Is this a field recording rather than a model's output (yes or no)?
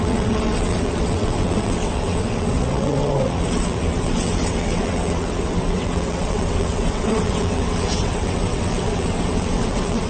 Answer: no